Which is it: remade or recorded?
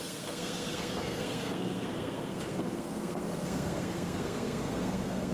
remade